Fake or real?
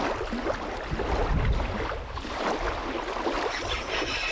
real